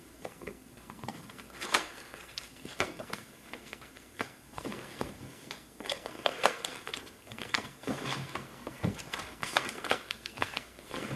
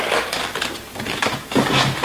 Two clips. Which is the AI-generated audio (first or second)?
first